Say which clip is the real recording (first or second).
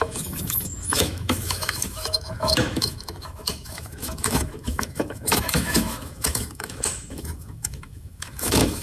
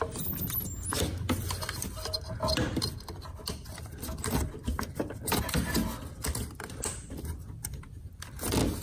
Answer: second